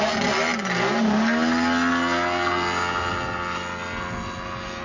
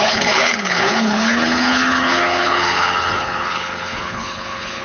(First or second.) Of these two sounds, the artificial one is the second